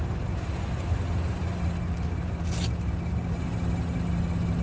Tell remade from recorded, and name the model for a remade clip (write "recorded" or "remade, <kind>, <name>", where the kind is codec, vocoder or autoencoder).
recorded